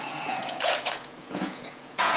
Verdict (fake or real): fake